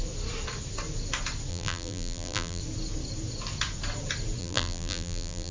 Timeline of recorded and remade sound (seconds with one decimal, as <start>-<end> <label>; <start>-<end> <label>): 0.0-1.5 recorded; 1.5-2.6 remade; 2.6-4.4 recorded; 4.4-5.5 remade